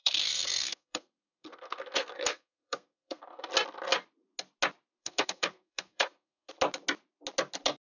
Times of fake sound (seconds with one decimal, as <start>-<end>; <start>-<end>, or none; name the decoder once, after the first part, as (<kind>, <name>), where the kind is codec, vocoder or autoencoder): 0.0-3.5 (codec, SNAC); 5.0-6.5